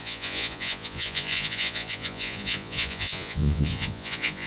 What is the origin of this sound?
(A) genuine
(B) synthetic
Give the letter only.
B